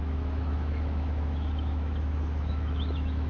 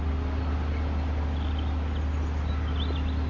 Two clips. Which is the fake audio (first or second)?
first